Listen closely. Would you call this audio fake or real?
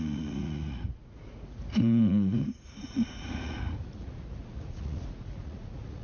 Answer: fake